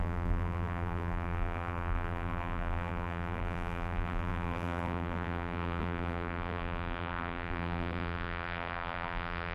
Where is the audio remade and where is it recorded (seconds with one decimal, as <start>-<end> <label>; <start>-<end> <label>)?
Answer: 0.0-9.5 remade